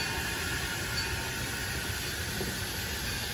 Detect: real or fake real